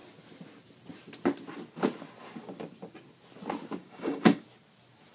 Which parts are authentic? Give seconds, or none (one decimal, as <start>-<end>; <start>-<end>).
0.0-3.8; 4.4-5.1